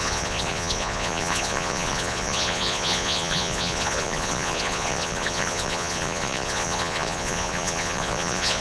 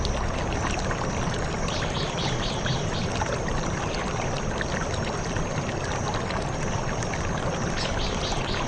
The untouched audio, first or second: second